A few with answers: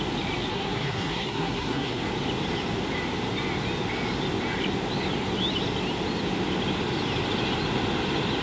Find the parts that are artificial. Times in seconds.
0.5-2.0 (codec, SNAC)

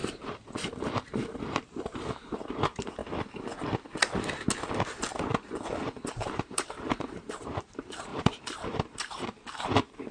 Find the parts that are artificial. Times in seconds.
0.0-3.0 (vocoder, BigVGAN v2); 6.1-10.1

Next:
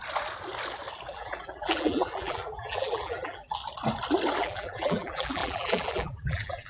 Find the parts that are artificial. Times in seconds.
1.1-3.6 (vocoder, BigVGAN v2); 4.4-6.7

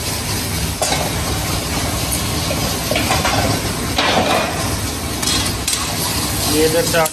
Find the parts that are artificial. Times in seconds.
none